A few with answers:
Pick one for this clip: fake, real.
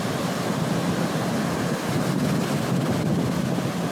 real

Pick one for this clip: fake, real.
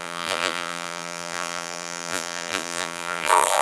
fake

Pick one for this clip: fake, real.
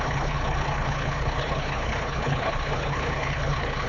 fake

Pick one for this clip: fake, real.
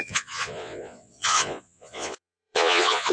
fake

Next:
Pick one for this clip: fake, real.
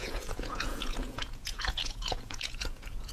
fake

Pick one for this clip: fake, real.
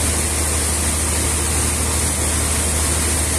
real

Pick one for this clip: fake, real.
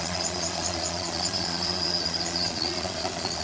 fake